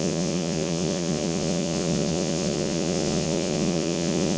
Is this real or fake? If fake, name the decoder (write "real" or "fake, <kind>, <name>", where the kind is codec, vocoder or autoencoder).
fake, vocoder, Vocos